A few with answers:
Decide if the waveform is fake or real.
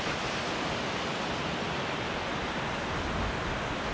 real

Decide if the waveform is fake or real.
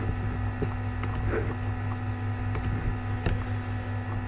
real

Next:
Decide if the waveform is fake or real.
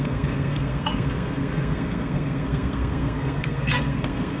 fake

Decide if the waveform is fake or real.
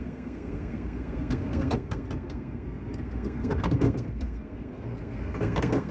fake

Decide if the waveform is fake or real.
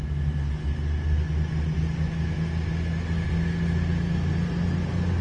real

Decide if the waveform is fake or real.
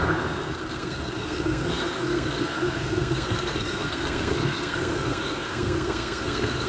fake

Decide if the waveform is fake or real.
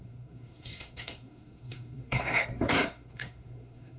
fake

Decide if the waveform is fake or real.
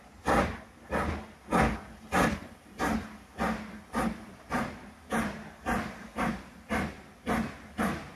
real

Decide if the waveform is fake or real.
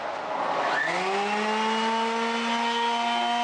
real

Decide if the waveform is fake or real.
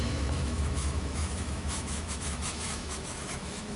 fake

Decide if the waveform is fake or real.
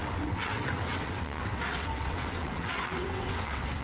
fake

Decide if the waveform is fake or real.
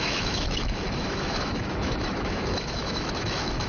fake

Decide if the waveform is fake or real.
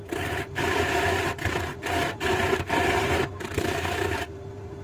fake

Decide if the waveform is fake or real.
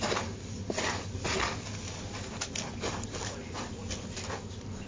real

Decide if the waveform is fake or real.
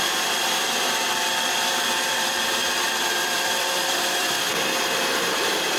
fake